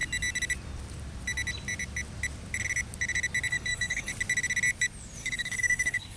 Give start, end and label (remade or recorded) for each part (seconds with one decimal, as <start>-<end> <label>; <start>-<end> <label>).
0.0-3.5 recorded; 3.5-4.1 remade; 4.1-5.2 recorded; 5.2-6.2 remade